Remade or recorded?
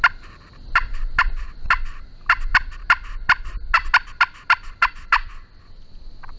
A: recorded